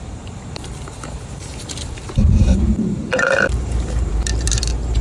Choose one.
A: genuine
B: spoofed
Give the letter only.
B